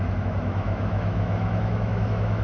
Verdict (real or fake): fake